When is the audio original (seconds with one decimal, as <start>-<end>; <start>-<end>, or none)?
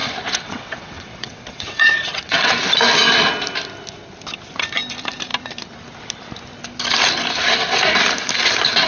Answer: 2.5-8.9